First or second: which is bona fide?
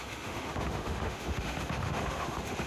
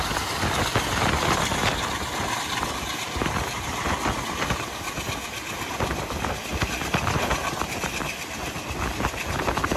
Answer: second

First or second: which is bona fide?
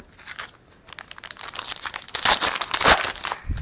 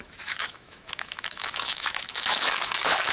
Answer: first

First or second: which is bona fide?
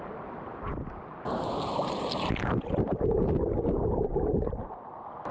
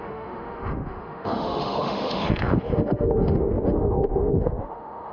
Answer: first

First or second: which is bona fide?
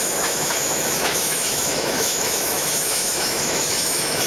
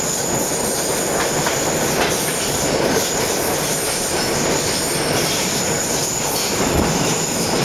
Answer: second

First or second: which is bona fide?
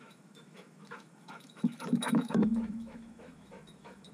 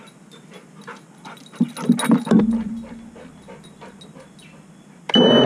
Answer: second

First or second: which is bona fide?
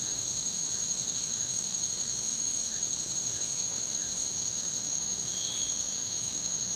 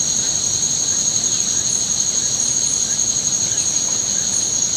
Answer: second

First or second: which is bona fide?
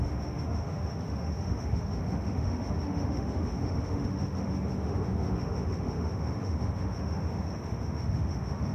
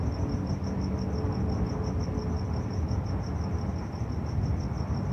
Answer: second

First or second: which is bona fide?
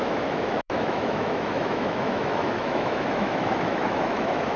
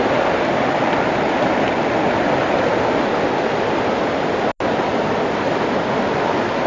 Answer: second